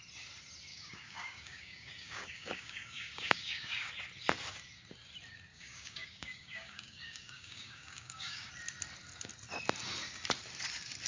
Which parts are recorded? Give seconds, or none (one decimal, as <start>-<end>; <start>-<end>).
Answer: 0.0-0.7; 3.9-5.5; 8.5-11.1